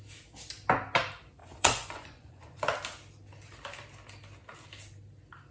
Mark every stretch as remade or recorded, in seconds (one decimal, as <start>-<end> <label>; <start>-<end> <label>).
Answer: 0.0-1.4 recorded; 1.4-2.6 remade; 2.6-5.5 recorded